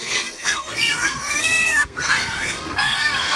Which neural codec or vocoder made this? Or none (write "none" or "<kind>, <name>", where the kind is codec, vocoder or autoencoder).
codec, SNAC